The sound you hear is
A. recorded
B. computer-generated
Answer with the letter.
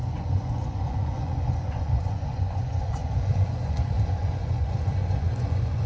B